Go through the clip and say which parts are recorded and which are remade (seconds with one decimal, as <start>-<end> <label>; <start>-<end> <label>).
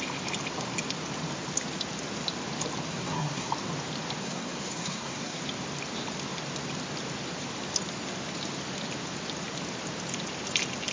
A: 0.0-2.9 recorded; 2.9-3.5 remade; 3.5-4.2 recorded; 4.2-5.4 remade; 5.4-10.9 recorded